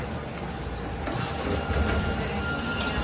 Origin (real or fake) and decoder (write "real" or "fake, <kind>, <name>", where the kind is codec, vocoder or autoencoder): real